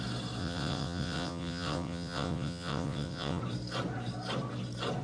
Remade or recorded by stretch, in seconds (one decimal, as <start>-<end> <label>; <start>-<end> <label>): 0.0-0.4 recorded; 0.4-3.4 remade; 3.4-5.0 recorded